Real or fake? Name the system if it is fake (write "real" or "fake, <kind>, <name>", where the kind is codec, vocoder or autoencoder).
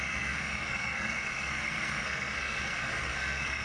fake, codec, SNAC